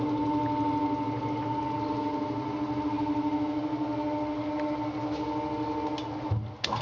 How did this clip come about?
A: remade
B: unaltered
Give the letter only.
B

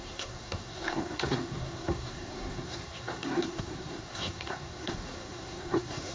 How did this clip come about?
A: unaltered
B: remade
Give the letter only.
B